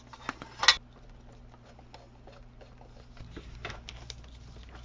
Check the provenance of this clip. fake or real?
real